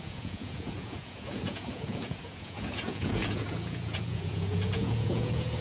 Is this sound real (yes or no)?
no